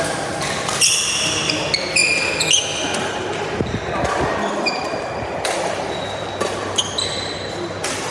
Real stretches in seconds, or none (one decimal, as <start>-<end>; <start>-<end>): 0.0-8.1